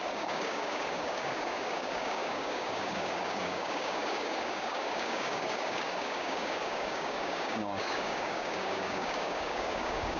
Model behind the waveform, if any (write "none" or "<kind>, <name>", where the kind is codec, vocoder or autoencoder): codec, DAC